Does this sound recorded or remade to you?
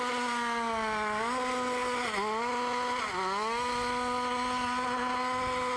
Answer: recorded